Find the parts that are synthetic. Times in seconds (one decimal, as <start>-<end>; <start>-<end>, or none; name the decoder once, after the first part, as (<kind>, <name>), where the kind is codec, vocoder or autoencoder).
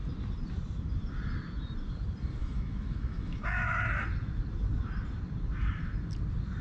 2.4-3.8 (autoencoder, DAC-VAE)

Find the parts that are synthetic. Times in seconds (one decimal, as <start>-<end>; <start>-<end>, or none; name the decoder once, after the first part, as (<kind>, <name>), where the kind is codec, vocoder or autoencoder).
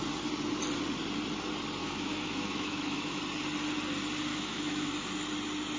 1.8-3.2 (autoencoder, DAC-VAE); 4.3-4.9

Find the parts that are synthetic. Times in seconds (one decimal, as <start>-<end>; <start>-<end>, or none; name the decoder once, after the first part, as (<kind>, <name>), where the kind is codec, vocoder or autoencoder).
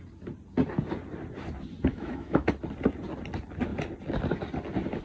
1.9-2.5 (autoencoder, DAC-VAE)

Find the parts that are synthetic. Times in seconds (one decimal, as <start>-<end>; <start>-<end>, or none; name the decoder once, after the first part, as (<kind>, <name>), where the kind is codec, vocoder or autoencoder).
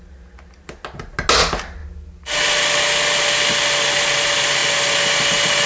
none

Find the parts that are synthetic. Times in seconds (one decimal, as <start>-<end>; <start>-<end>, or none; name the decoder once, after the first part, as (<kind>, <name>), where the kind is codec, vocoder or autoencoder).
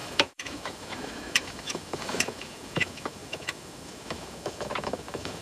0.0-5.4 (autoencoder, DAC-VAE)